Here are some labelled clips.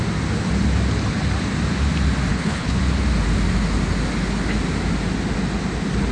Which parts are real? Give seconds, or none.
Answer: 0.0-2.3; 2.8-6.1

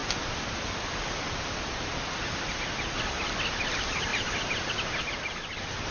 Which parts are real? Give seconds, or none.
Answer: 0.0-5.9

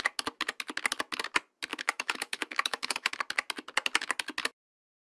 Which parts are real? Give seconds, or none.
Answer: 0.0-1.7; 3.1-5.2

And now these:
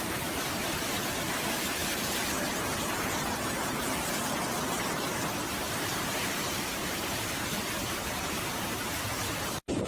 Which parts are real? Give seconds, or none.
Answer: 0.0-1.8; 2.4-5.0; 9.3-9.9

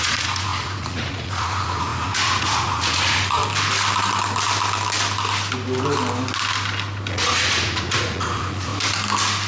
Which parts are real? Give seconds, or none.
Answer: 3.4-7.1; 8.7-9.5

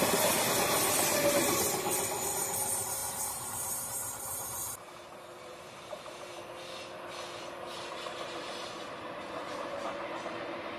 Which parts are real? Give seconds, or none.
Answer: 0.0-3.0; 6.4-10.8

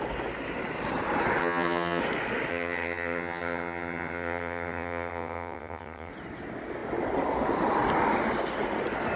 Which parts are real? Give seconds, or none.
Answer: 0.0-1.4; 2.0-2.5; 6.1-9.2

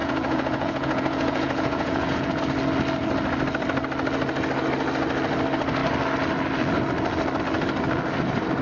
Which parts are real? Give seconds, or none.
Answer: 2.4-8.6